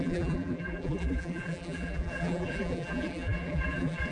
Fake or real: fake